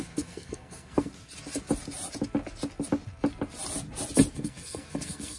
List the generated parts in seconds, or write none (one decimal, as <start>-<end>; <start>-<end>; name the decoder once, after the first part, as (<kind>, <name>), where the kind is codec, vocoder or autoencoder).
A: 0.0-1.1 (codec, SNAC); 4.3-5.4